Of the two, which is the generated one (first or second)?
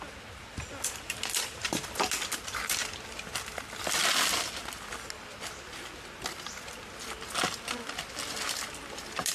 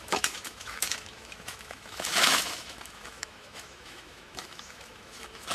second